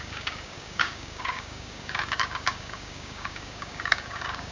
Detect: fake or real fake